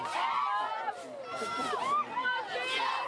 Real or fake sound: real